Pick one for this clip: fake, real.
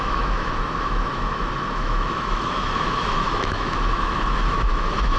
fake